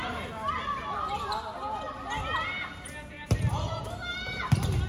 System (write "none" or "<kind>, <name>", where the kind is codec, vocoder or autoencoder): none